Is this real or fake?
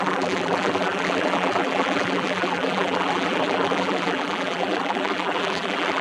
fake